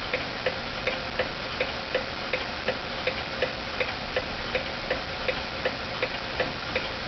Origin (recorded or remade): recorded